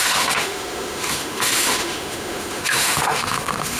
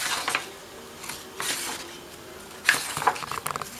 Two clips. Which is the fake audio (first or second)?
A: first